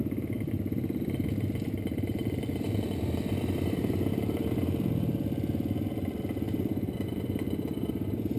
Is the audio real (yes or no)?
no